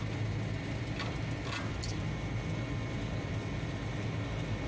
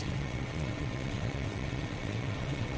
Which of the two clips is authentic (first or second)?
first